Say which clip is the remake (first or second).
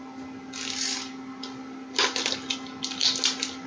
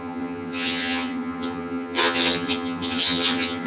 second